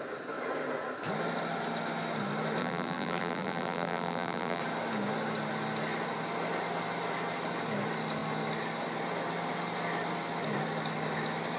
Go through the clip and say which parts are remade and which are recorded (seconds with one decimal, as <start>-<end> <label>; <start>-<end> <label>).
0.0-2.6 recorded; 2.6-4.6 remade; 4.6-11.6 recorded